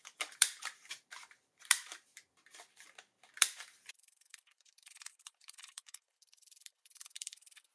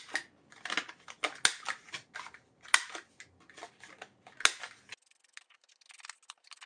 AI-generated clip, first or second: first